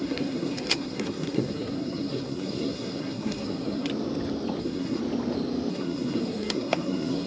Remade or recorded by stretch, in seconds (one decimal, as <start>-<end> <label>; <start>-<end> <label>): 0.0-3.9 remade; 3.9-4.6 recorded; 4.6-5.0 remade; 5.0-5.7 recorded; 5.7-7.3 remade